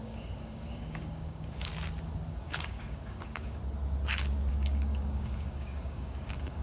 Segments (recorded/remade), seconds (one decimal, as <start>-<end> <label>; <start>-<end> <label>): 0.0-1.7 remade; 1.7-2.3 recorded; 2.3-3.6 remade; 3.6-4.5 recorded; 4.5-6.6 remade